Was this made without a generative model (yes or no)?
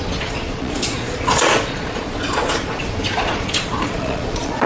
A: no